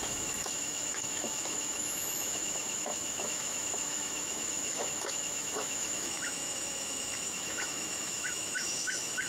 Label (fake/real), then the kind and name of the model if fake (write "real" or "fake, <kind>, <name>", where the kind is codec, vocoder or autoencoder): fake, autoencoder, DAC-VAE